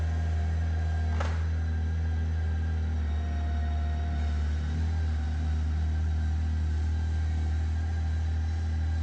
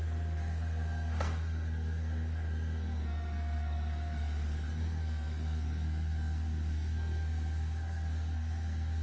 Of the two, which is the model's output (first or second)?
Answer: second